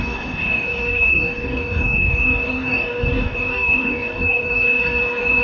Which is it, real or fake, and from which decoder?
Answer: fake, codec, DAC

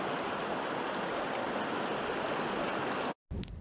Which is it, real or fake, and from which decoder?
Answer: real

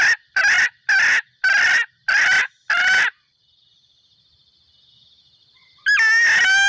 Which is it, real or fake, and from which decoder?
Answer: real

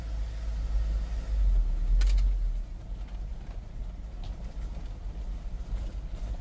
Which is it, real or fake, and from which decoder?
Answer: real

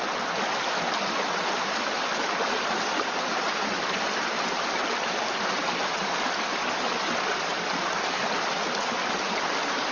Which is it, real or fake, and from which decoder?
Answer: real